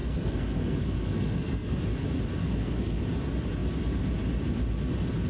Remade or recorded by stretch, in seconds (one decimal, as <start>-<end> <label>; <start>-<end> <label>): 0.0-1.8 remade; 1.8-2.4 recorded; 2.4-3.0 remade; 3.0-5.3 recorded